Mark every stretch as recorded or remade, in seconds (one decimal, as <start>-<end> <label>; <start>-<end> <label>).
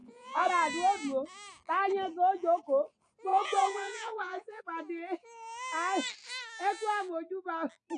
0.0-0.5 remade; 0.5-3.3 recorded; 3.3-4.6 remade; 4.6-8.0 recorded